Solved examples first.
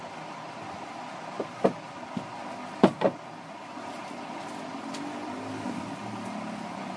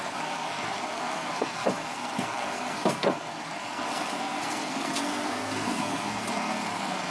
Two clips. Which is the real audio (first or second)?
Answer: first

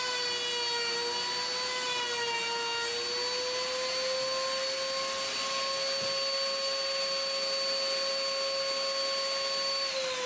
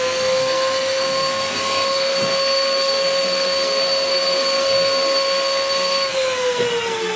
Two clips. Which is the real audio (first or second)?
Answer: first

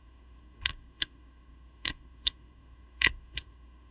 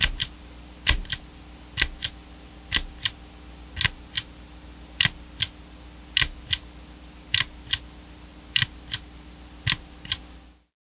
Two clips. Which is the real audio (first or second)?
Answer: second